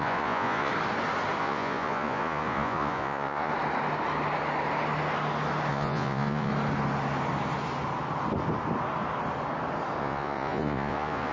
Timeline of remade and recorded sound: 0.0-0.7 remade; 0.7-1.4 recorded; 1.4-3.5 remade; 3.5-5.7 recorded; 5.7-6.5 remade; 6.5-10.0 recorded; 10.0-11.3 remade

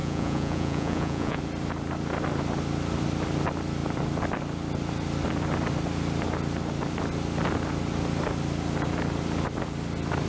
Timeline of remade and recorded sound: 0.0-1.4 remade; 1.4-10.3 recorded